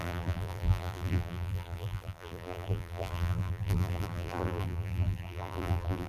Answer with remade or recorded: remade